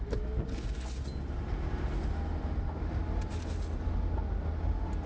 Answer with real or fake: real